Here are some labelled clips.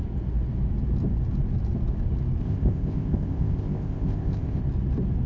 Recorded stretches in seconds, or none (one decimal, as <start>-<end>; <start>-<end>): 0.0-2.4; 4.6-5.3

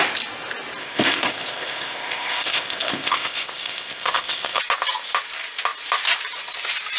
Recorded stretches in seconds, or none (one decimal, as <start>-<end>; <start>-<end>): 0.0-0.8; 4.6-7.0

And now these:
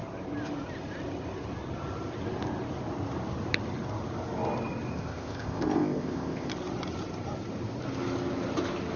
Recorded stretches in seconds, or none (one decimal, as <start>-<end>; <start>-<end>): 0.0-4.9; 6.5-9.0

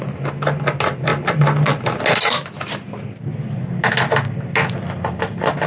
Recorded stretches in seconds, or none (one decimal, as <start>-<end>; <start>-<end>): 0.0-5.7

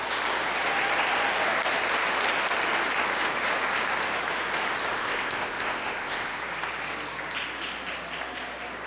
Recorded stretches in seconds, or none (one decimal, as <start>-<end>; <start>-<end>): 0.0-4.9; 6.4-8.9